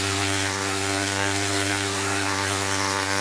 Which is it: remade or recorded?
remade